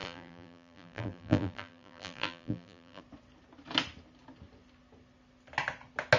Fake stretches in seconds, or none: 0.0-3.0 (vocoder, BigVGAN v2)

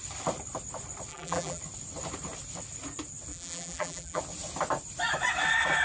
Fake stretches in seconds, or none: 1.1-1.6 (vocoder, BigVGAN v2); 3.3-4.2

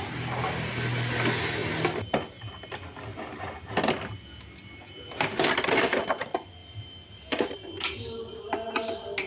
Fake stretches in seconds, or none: 6.6-8.5 (vocoder, BigVGAN v2)